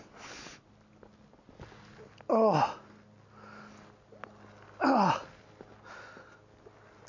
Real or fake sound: real